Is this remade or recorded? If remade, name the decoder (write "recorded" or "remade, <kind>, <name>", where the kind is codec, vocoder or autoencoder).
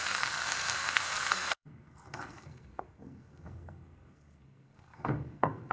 remade, codec, SNAC